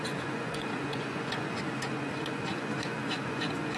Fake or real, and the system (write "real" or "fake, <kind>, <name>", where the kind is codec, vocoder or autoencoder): fake, vocoder, Vocos